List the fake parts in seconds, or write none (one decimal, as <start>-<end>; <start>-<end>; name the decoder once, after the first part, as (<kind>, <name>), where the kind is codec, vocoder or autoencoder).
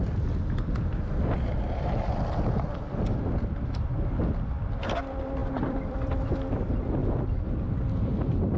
5.4-6.3 (vocoder, BigVGAN v2); 7.0-8.6